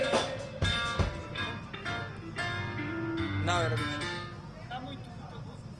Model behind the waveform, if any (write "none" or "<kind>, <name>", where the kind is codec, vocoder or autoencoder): none